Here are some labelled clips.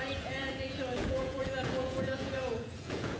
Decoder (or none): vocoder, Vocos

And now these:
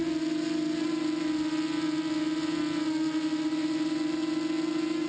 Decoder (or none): none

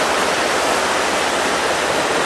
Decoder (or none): none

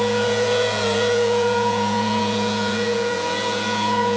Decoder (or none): vocoder, Vocos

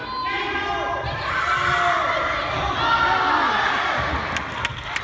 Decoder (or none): none